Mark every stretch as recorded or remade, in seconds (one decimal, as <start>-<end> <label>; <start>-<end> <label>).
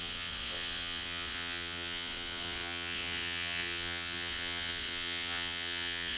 0.0-6.2 remade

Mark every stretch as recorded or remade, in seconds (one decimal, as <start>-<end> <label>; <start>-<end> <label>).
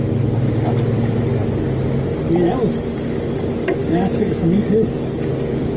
0.0-3.8 recorded; 3.8-5.3 remade; 5.3-5.8 recorded